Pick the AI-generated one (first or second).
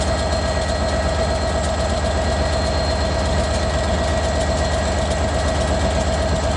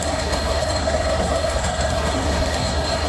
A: second